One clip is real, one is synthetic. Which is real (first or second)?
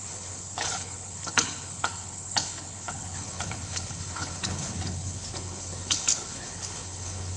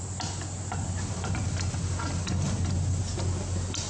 second